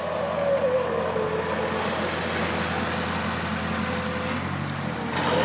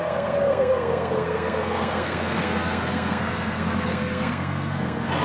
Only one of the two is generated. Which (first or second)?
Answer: second